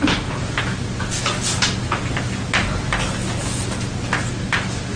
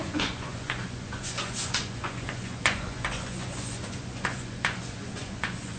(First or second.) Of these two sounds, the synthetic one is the second